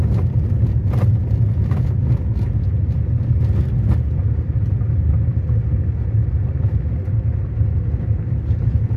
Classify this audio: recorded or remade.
recorded